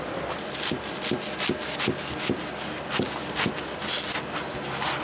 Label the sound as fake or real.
real